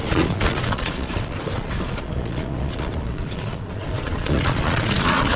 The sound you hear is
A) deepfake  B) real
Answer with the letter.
A